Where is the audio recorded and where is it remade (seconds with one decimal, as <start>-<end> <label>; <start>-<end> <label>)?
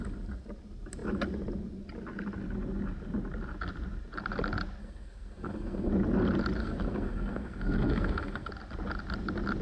0.0-4.8 recorded; 4.8-5.9 remade; 5.9-6.6 recorded; 6.6-8.5 remade; 8.5-9.6 recorded